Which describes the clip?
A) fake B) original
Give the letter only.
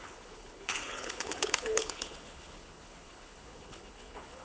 A